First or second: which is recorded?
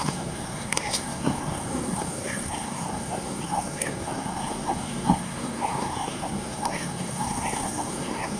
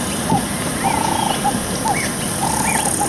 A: second